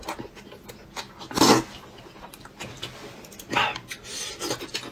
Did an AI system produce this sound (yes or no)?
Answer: no